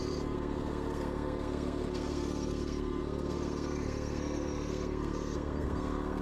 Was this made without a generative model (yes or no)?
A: no